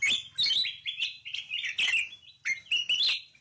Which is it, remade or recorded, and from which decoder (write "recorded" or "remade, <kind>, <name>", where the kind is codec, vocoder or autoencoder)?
recorded